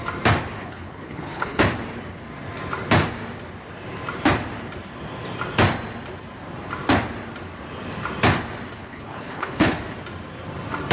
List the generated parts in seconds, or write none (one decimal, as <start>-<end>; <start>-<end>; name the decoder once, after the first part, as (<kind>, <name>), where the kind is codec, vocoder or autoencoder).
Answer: 0.6-1.6 (codec, HILCodec); 8.8-9.8